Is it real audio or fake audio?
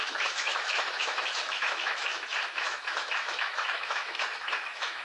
fake